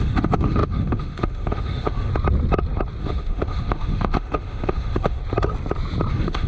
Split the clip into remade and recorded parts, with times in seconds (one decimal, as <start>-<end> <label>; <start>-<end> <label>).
0.0-2.1 remade; 2.1-3.0 recorded; 3.0-5.2 remade; 5.2-6.1 recorded; 6.1-6.5 remade